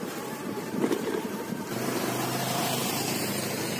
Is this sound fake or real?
fake